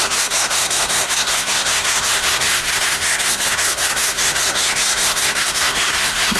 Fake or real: fake